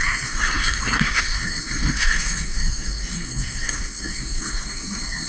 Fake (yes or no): yes